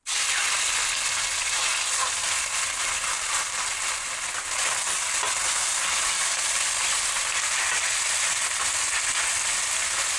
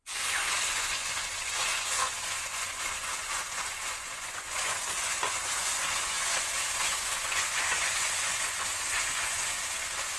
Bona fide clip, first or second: first